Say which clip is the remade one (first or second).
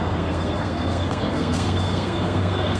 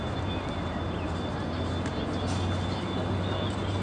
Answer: first